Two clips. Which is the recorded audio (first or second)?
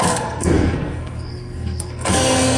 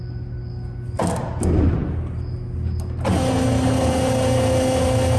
second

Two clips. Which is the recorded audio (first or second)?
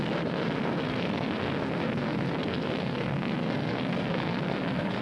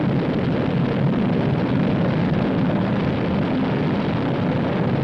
second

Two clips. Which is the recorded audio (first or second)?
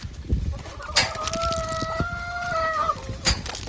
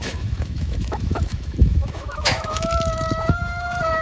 first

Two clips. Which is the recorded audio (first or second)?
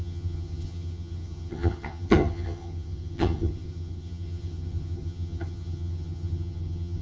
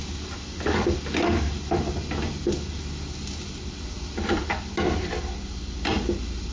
second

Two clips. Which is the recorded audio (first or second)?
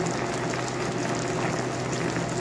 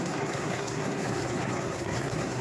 first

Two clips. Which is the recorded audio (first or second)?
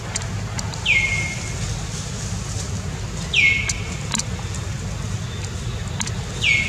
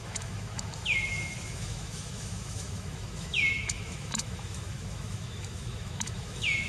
first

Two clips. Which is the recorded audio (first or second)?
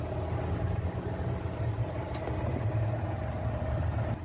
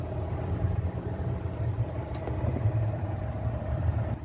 first